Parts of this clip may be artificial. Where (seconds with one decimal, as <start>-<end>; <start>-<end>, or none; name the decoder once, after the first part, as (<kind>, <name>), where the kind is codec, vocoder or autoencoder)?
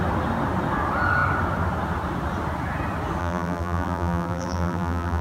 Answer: 3.2-5.2 (vocoder, BigVGAN v2)